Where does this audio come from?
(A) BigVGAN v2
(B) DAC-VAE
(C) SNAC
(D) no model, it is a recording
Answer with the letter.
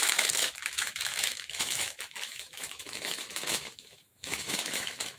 B